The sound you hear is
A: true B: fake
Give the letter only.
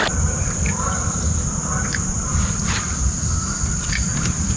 A